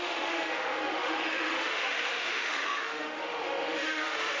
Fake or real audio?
fake